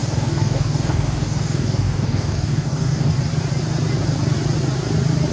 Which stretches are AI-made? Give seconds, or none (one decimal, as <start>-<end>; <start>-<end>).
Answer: 0.0-3.1